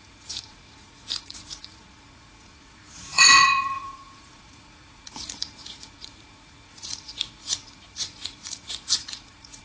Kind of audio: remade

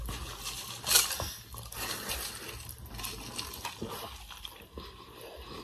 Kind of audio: recorded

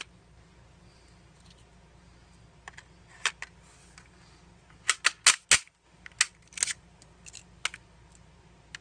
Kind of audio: recorded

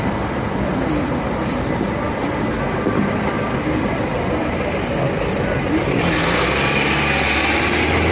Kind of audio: recorded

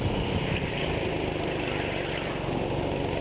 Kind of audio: recorded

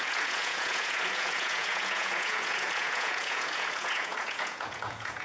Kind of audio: remade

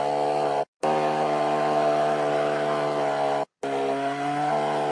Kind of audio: recorded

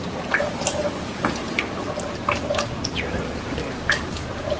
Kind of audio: recorded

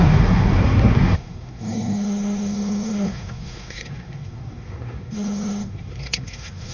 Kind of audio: remade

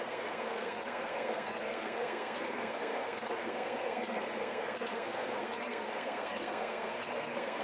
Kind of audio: remade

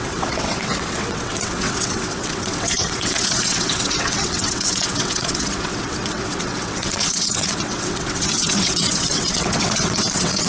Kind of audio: remade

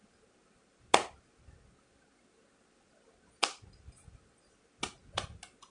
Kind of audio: recorded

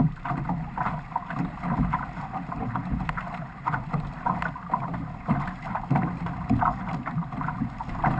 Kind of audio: recorded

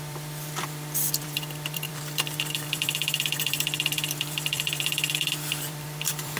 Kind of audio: remade